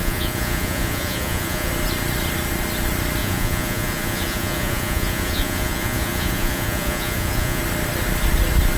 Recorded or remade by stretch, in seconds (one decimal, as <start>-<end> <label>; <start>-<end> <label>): 0.0-1.7 remade; 1.7-3.2 recorded; 3.2-7.6 remade; 7.6-8.8 recorded